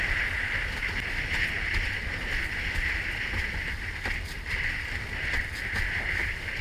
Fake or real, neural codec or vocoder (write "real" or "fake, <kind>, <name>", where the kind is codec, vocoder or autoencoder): real